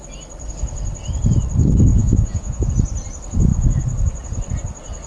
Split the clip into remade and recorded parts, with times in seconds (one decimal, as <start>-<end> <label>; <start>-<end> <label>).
0.0-1.9 recorded; 1.9-2.7 remade; 2.7-5.1 recorded